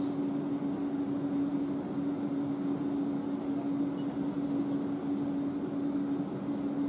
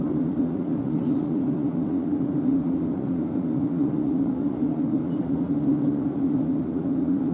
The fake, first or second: second